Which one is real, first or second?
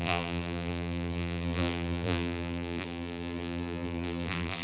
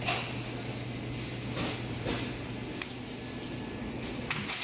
second